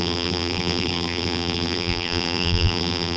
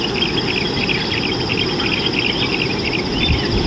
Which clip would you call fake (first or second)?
first